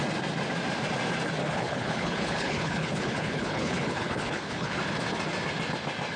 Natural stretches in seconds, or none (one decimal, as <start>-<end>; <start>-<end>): 0.0-1.4; 4.8-6.2